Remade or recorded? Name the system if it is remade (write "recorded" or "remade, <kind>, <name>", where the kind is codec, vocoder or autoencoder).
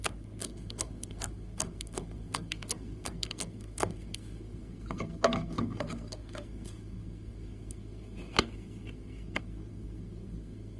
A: remade, codec, SNAC